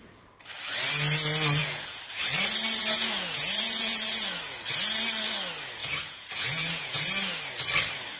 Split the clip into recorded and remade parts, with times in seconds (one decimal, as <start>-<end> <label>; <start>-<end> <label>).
0.0-1.6 recorded; 1.6-2.2 remade; 2.2-2.8 recorded; 2.8-4.4 remade; 4.4-5.8 recorded; 5.8-7.0 remade; 7.0-8.2 recorded